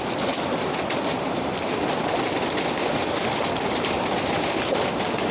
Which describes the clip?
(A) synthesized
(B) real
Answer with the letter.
B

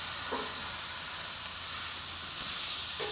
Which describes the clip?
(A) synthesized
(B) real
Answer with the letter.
B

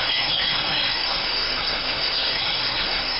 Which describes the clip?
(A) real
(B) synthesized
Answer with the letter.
B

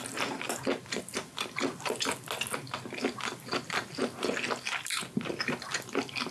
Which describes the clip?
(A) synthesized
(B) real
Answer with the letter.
B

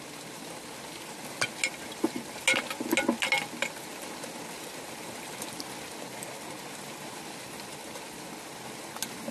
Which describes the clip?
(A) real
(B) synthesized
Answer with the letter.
A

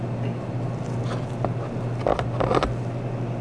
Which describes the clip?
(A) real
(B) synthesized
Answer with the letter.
A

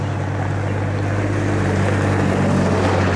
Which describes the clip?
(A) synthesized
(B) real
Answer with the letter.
B